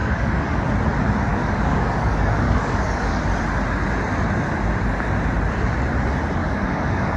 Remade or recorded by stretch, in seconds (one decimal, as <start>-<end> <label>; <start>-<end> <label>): 0.0-0.6 remade; 0.6-1.3 recorded; 1.3-3.2 remade; 3.2-6.4 recorded; 6.4-7.2 remade

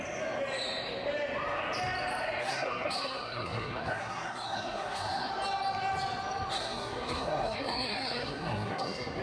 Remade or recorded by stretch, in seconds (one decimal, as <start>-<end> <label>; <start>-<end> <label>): 0.0-2.4 recorded; 2.4-5.3 remade; 5.3-6.5 recorded; 6.5-9.2 remade